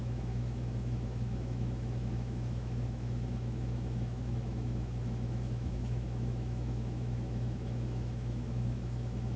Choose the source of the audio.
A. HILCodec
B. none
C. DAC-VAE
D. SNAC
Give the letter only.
C